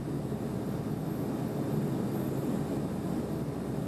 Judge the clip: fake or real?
real